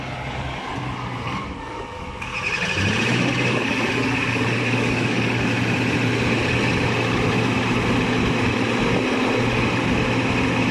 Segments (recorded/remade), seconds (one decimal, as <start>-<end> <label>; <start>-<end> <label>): 0.0-2.3 remade; 2.3-3.5 recorded; 3.5-5.5 remade; 5.5-10.7 recorded